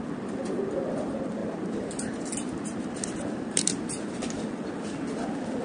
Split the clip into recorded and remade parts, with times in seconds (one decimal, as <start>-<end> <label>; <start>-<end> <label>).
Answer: 0.0-1.4 recorded; 1.4-4.5 remade; 4.5-5.6 recorded